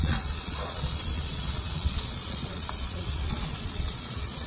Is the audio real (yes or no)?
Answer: no